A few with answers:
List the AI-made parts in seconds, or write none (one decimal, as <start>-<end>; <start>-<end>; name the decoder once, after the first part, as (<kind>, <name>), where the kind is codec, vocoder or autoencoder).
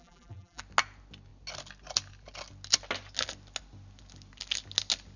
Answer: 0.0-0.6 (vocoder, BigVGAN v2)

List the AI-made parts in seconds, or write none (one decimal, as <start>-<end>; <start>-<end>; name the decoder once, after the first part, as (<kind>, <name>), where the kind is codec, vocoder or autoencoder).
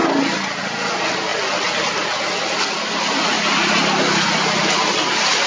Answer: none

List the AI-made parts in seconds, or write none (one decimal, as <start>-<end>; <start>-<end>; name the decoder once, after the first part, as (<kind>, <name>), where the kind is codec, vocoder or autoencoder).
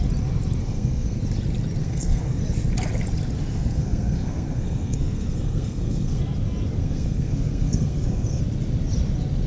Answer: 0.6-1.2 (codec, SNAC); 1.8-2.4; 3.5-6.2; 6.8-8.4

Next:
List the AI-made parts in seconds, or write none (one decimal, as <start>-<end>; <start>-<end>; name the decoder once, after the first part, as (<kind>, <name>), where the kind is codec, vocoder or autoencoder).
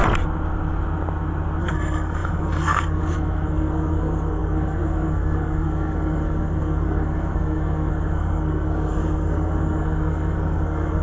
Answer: 1.6-11.0 (codec, SNAC)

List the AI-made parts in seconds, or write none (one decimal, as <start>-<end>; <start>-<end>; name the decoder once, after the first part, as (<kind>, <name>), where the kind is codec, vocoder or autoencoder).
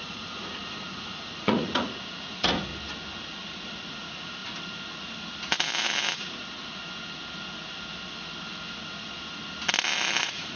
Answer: 0.0-2.7 (vocoder, Vocos); 3.9-4.4; 6.2-6.8; 10.2-10.6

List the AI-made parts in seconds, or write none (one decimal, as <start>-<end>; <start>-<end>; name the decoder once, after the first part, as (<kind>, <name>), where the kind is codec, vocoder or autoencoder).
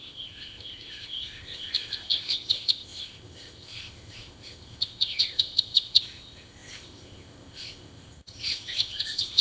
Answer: 0.0-9.4 (codec, ZipCodec)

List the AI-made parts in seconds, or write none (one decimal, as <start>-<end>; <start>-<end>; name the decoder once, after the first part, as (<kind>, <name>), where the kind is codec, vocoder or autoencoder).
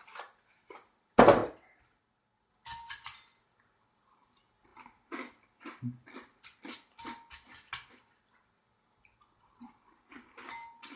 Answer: none